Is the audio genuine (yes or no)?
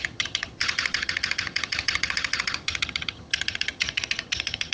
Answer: no